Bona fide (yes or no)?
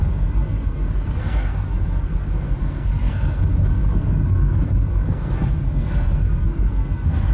no